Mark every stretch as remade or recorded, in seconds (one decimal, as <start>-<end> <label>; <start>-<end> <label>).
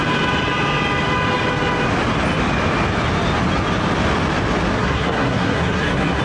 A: 0.0-4.8 recorded; 4.8-6.2 remade